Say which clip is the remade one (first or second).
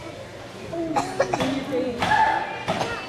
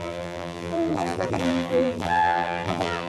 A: second